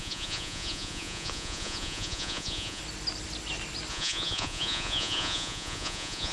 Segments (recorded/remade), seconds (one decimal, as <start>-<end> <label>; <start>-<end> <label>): 0.0-2.8 remade; 2.8-3.9 recorded; 3.9-6.3 remade